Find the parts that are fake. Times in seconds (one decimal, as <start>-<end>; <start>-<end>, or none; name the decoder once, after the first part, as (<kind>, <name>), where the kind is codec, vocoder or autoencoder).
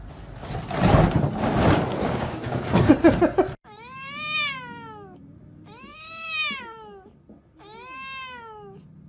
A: 2.0-2.9 (codec, DAC)